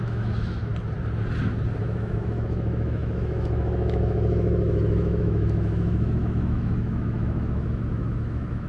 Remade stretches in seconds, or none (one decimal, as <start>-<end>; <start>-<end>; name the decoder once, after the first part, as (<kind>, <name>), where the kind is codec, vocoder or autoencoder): 0.0-0.7 (autoencoder, DAC-VAE); 1.8-8.7